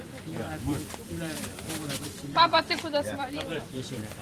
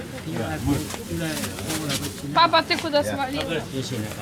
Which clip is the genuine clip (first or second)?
second